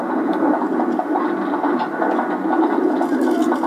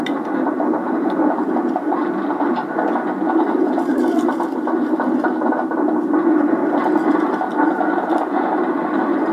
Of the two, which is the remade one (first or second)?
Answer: second